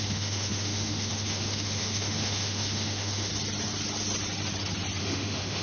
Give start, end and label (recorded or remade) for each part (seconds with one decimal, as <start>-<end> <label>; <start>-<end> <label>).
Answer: 0.0-3.3 remade; 3.3-5.0 recorded; 5.0-5.6 remade